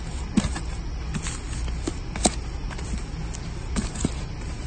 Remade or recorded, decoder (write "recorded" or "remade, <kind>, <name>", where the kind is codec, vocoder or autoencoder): recorded